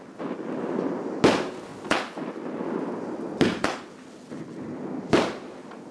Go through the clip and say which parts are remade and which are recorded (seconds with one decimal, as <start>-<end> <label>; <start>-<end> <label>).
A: 0.0-5.9 recorded